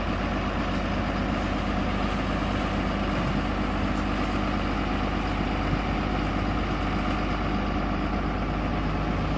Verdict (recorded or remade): recorded